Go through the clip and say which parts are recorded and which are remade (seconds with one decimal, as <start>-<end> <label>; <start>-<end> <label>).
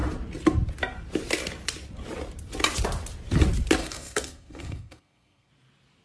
0.0-3.8 recorded; 3.8-5.5 remade; 5.5-6.0 recorded